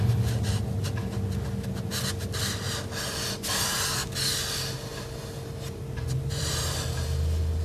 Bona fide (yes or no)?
yes